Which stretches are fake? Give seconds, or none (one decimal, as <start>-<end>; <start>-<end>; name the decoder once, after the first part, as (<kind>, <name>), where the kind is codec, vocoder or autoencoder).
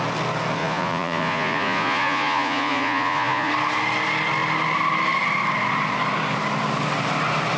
0.6-3.5 (vocoder, Vocos)